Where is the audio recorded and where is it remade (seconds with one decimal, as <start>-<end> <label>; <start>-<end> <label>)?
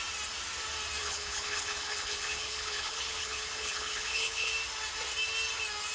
0.0-1.0 recorded; 1.0-4.5 remade; 4.5-5.9 recorded